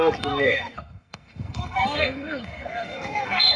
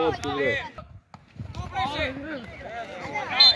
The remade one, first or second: first